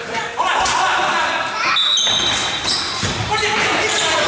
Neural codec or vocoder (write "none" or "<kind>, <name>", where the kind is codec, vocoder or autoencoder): none